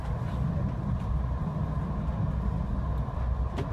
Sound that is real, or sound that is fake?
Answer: real